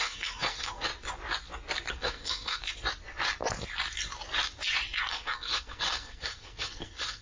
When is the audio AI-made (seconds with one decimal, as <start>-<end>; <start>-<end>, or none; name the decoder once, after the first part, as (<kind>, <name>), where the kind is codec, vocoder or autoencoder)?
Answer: 0.0-0.9 (codec, SNAC); 1.9-2.6; 5.1-7.2